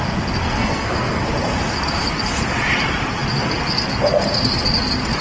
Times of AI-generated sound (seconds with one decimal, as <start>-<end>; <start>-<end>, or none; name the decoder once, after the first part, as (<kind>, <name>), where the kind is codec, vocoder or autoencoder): 0.4-1.2 (codec, SNAC)